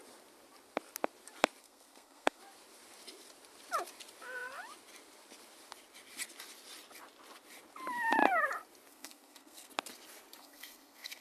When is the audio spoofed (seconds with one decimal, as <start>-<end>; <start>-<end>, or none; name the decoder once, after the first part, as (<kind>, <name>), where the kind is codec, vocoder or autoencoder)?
1.6-2.4 (codec, SNAC); 8.9-9.7; 10.4-11.2